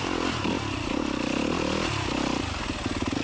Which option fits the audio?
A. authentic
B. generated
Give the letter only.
A